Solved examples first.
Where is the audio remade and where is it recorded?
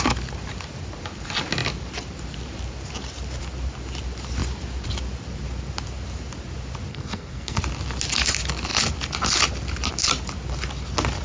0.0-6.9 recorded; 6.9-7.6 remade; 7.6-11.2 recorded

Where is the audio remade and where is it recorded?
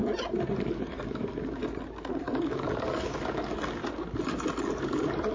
0.0-0.6 recorded; 0.6-1.6 remade; 1.6-2.3 recorded; 2.3-3.8 remade; 3.8-4.6 recorded; 4.6-5.3 remade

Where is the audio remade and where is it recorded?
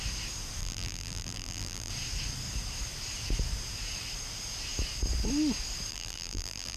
0.0-0.6 recorded; 0.6-1.9 remade; 1.9-5.9 recorded; 5.9-6.8 remade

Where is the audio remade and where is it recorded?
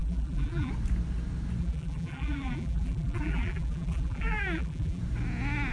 0.0-0.7 remade; 0.7-1.6 recorded; 1.6-5.0 remade; 5.0-5.7 recorded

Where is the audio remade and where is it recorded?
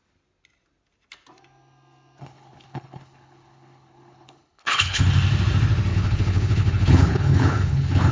0.0-2.2 recorded; 2.2-5.0 remade; 5.0-5.9 recorded; 5.9-8.1 remade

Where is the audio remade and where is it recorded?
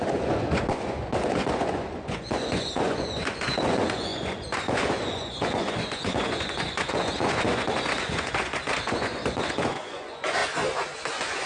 0.0-10.4 remade; 10.4-11.1 recorded; 11.1-11.5 remade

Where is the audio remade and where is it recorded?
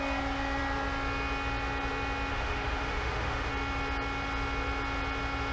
0.0-2.3 recorded; 2.3-3.5 remade; 3.5-5.5 recorded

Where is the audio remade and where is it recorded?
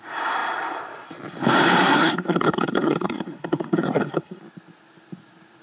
0.0-1.8 recorded; 1.8-4.4 remade; 4.4-5.6 recorded